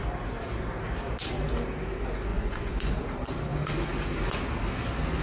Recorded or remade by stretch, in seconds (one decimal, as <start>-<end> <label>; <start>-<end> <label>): 0.0-2.3 recorded; 2.3-2.9 remade; 2.9-5.2 recorded